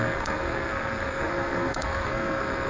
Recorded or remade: remade